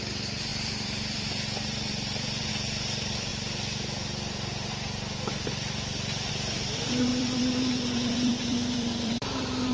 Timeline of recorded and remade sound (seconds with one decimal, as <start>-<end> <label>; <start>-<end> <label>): 0.0-3.3 remade; 3.3-6.3 recorded; 6.3-9.7 remade

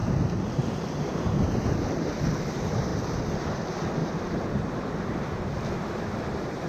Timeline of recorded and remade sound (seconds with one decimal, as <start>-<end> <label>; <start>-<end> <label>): 0.0-4.0 recorded; 4.0-4.7 remade; 4.7-6.7 recorded

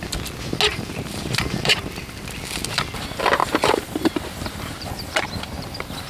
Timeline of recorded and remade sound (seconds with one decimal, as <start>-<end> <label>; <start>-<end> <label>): 0.0-0.7 recorded; 0.7-1.8 remade; 1.8-3.4 recorded; 3.4-4.9 remade; 4.9-6.1 recorded

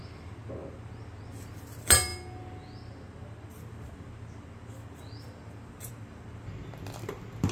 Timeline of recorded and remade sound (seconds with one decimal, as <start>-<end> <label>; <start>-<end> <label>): 0.0-7.5 recorded

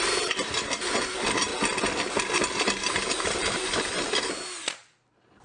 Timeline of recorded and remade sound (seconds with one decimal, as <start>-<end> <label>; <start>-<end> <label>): 0.0-5.4 recorded

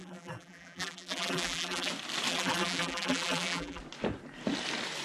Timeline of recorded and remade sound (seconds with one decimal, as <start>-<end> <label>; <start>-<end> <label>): 0.0-1.9 remade; 1.9-2.3 recorded; 2.3-3.8 remade; 3.8-5.0 recorded

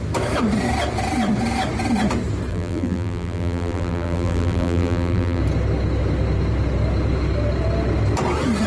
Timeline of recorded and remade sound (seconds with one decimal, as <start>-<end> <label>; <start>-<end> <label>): 0.0-2.5 recorded; 2.5-5.4 remade; 5.4-8.7 recorded

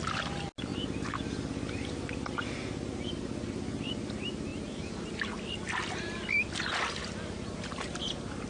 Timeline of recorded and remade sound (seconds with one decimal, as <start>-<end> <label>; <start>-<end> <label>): 0.0-0.7 recorded; 0.7-3.9 remade; 3.9-4.5 recorded; 4.5-5.1 remade; 5.1-8.5 recorded